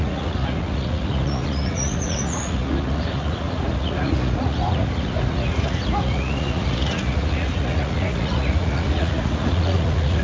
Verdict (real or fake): fake